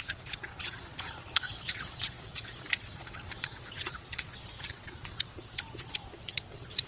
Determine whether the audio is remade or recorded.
remade